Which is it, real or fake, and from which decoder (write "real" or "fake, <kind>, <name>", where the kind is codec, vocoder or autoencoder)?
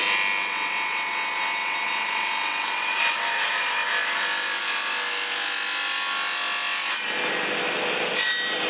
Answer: real